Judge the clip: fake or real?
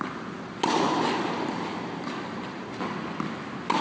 real